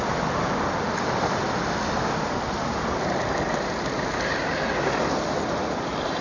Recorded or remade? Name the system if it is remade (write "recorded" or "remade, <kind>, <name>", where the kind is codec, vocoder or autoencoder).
recorded